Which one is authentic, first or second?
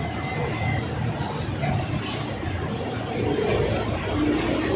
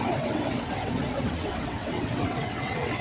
first